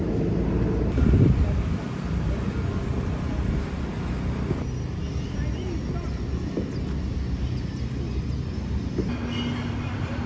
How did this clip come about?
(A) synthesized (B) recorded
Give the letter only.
B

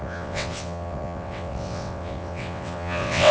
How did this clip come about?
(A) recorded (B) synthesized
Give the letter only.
B